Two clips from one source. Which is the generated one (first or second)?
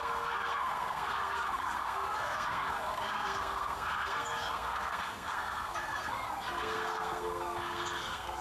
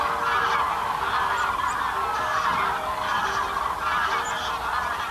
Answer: first